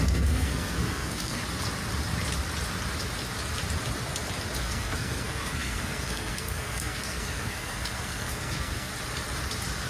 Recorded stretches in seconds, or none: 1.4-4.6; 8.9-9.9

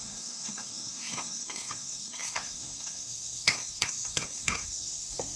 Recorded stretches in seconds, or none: none